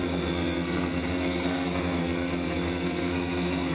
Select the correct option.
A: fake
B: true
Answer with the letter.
A